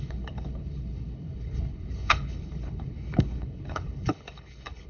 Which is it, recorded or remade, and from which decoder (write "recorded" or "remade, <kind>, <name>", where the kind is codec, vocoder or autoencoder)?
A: remade, codec, HILCodec